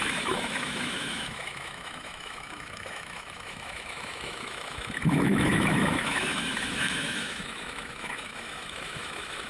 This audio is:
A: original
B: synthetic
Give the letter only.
B